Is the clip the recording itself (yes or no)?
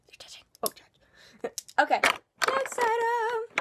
yes